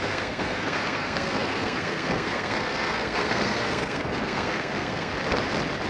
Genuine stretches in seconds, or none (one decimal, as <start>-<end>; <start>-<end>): 5.1-5.9